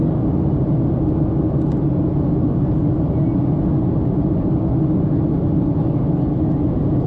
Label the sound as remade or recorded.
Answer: recorded